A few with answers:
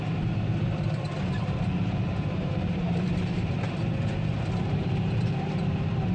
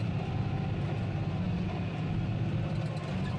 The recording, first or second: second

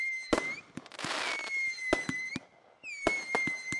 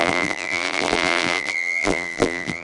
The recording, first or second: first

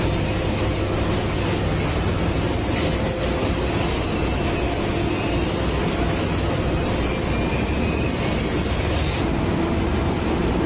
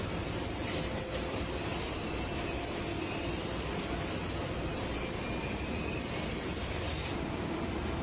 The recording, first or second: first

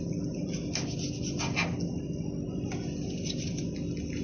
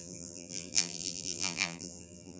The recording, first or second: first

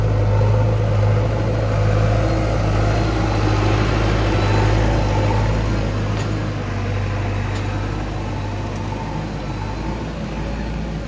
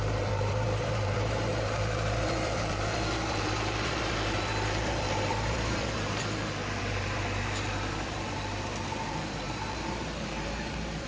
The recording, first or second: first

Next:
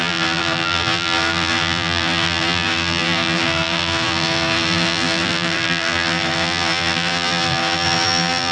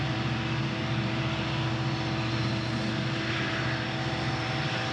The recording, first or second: second